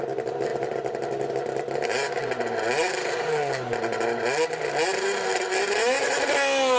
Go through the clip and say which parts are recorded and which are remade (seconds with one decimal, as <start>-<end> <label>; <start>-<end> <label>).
0.0-6.8 recorded